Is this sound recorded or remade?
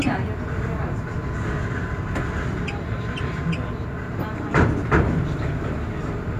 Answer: recorded